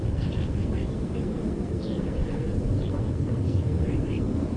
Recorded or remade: remade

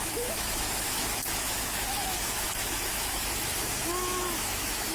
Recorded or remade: remade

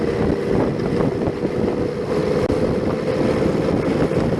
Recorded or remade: recorded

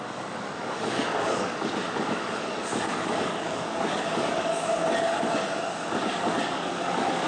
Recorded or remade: remade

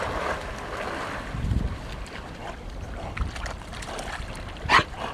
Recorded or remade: recorded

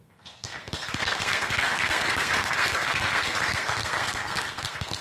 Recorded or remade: remade